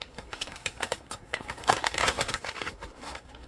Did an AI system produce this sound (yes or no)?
yes